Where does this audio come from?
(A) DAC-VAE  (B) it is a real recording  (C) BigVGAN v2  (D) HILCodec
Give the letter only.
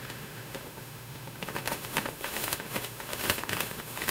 A